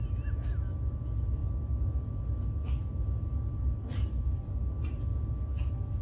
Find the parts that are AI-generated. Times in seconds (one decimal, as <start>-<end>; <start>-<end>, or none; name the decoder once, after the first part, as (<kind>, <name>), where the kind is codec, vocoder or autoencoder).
none